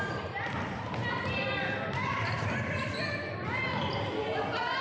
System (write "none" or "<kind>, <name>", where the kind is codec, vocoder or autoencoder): vocoder, BigVGAN v2